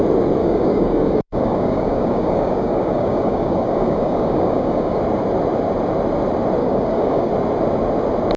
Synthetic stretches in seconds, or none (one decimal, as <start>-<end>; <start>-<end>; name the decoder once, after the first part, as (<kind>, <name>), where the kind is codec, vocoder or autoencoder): 0.4-5.0 (codec, DAC); 6.6-7.3